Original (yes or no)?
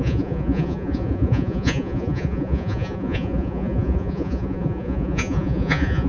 no